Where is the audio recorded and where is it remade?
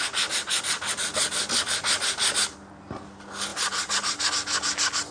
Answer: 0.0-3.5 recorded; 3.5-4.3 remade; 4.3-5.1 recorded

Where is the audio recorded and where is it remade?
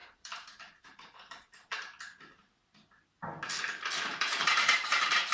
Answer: 0.0-1.7 remade; 1.7-3.6 recorded; 3.6-5.3 remade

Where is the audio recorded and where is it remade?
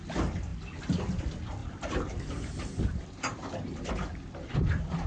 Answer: 0.0-1.6 recorded; 1.6-3.9 remade; 3.9-5.1 recorded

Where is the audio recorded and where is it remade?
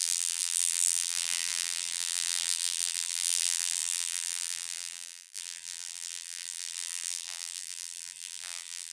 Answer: 0.0-8.9 remade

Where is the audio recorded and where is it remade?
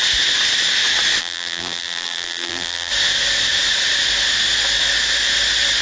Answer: 0.0-1.2 recorded; 1.2-2.9 remade; 2.9-5.8 recorded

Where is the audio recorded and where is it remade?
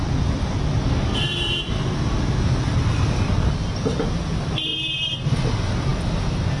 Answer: 0.0-4.7 remade; 4.7-5.5 recorded; 5.5-6.6 remade